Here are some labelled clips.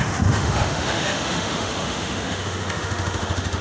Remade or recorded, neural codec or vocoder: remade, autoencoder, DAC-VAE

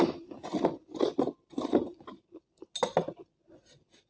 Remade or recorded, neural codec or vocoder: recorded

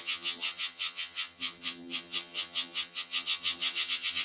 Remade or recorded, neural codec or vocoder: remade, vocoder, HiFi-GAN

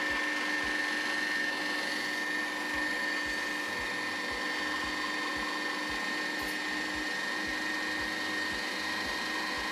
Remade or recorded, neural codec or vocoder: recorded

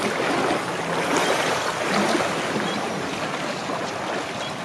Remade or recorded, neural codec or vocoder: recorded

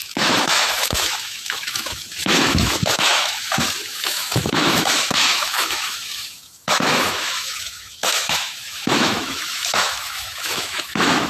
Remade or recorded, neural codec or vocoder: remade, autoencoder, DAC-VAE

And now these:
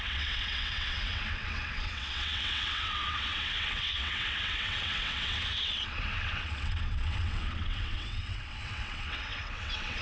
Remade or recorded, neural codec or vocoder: remade, vocoder, WaveNeXt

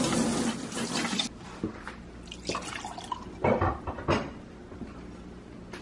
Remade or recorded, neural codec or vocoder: recorded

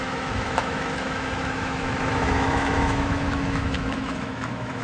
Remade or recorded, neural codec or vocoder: remade, autoencoder, DAC-VAE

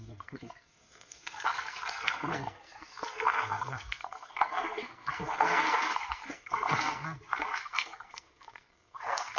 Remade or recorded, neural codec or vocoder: remade, codec, SNAC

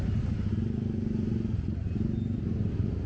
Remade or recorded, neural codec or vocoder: recorded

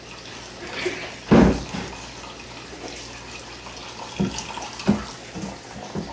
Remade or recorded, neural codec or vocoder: recorded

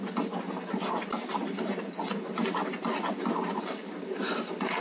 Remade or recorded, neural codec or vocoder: recorded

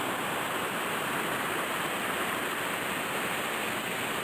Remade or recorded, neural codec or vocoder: recorded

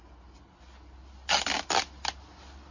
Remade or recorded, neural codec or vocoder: recorded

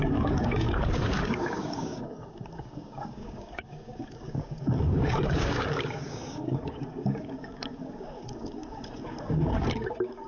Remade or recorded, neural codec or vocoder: remade, codec, DAC